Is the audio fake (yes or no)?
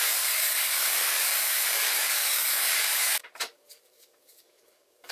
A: yes